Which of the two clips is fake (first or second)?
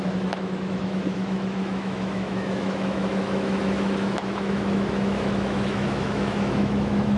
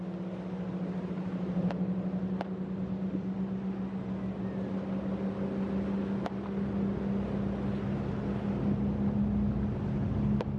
first